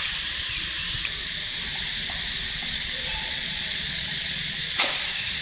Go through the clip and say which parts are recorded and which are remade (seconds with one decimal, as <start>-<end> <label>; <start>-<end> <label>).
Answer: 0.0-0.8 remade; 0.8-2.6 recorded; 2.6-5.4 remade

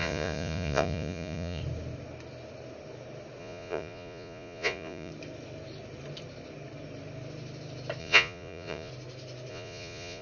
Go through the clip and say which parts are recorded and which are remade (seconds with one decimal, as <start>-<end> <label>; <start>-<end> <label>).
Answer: 0.0-1.6 remade; 1.6-3.4 recorded; 3.4-5.1 remade; 5.1-8.0 recorded; 8.0-8.9 remade; 8.9-9.5 recorded; 9.5-10.2 remade

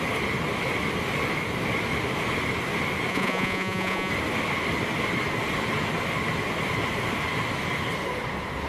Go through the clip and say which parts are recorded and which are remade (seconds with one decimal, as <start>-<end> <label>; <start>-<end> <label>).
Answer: 0.0-3.1 recorded; 3.1-4.1 remade; 4.1-8.7 recorded

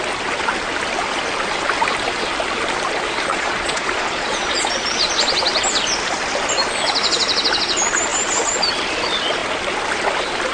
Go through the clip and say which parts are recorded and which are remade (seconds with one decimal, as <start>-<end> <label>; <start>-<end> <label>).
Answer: 0.0-3.3 recorded; 3.3-4.7 remade; 4.7-10.5 recorded

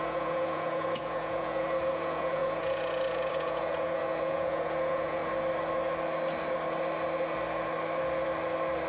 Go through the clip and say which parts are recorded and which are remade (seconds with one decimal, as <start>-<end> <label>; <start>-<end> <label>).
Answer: 0.0-5.2 remade; 5.2-8.9 recorded

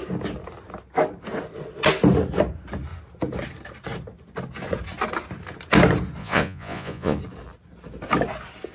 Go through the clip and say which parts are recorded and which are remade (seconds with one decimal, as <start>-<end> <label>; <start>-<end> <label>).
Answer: 0.0-6.2 recorded; 6.2-7.2 remade; 7.2-8.7 recorded

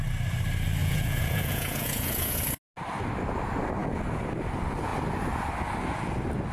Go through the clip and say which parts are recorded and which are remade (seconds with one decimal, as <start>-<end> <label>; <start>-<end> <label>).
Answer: 0.0-0.8 recorded; 0.8-2.4 remade; 2.4-6.5 recorded

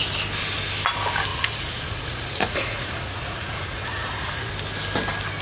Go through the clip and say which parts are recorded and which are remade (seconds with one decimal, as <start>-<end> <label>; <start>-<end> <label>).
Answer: 0.0-1.3 recorded; 1.3-4.5 remade; 4.5-5.4 recorded